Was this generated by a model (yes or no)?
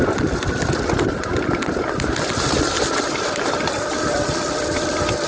no